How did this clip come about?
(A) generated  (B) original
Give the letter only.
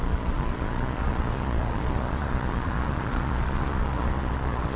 A